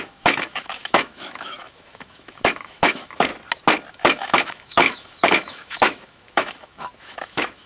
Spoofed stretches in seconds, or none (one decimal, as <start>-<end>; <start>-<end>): 0.0-3.3; 3.9-7.7